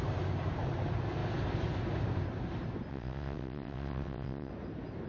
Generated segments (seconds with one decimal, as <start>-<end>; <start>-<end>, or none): 2.9-4.5